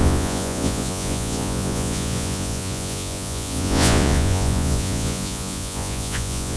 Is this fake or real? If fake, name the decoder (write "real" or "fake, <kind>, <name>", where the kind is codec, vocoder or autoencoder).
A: fake, vocoder, Vocos